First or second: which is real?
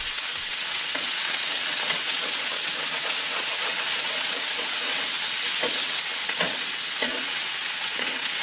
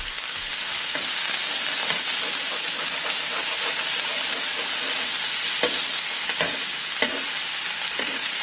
second